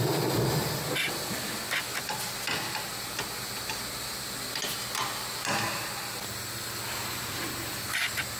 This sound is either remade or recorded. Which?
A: recorded